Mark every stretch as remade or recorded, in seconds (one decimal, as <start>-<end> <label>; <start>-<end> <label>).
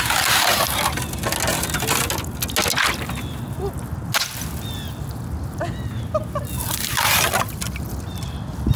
0.0-6.6 recorded; 6.6-8.3 remade; 8.3-8.8 recorded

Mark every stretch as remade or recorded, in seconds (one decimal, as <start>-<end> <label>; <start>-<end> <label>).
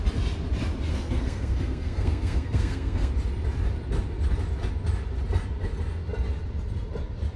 0.0-0.9 recorded; 0.9-3.1 remade; 3.1-7.4 recorded